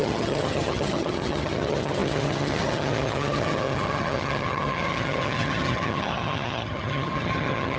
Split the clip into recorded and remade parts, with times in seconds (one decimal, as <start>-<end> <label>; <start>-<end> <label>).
0.0-7.8 remade